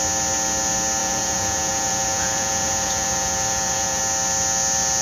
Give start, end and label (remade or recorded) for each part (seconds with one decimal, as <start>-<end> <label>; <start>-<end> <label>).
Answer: 0.0-1.0 recorded; 1.0-4.0 remade; 4.0-5.0 recorded